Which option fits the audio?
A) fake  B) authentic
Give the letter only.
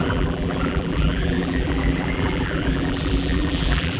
A